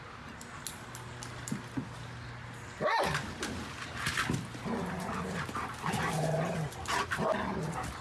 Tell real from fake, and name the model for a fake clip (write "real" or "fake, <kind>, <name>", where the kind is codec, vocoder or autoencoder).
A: real